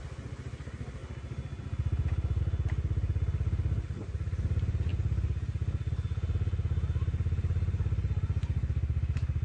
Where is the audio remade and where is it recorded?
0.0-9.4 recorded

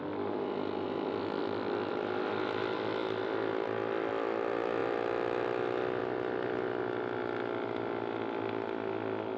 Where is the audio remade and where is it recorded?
0.0-9.4 recorded

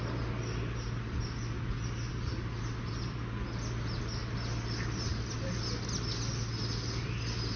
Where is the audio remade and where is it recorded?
0.0-7.6 recorded

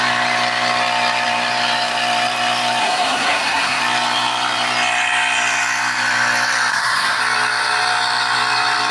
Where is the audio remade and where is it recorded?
0.0-2.8 recorded; 2.8-3.8 remade; 3.8-6.7 recorded; 6.7-7.2 remade; 7.2-8.9 recorded

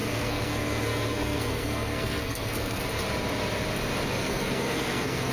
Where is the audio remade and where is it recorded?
0.0-2.8 remade; 2.8-4.2 recorded; 4.2-5.3 remade

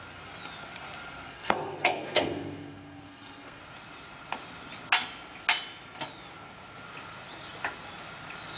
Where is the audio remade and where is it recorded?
0.0-1.3 recorded; 1.3-3.6 remade; 3.6-8.6 recorded

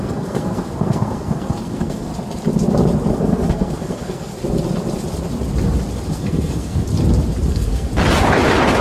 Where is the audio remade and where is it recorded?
0.0-2.1 remade; 2.1-3.1 recorded; 3.1-4.3 remade; 4.3-6.1 recorded; 6.1-6.9 remade; 6.9-7.5 recorded; 7.5-7.9 remade; 7.9-8.8 recorded

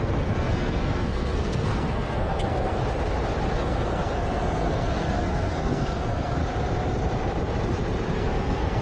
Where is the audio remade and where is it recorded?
0.0-2.8 remade; 2.8-3.5 recorded; 3.5-6.4 remade; 6.4-8.1 recorded; 8.1-8.8 remade